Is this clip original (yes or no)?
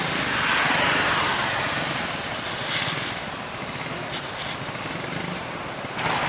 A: yes